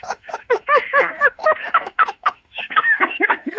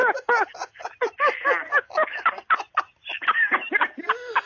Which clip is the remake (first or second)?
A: first